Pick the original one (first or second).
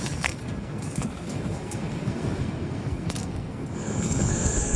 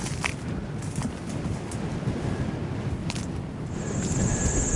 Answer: second